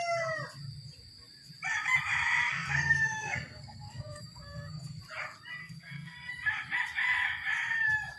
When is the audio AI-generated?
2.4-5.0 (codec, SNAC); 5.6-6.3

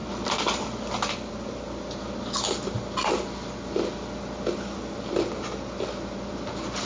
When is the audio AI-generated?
none